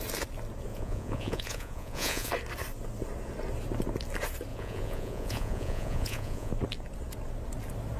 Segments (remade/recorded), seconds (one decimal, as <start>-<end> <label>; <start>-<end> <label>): 0.0-0.7 recorded; 0.7-2.3 remade; 2.3-4.5 recorded; 4.5-6.5 remade; 6.5-8.0 recorded